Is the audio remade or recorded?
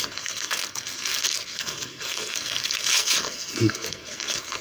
remade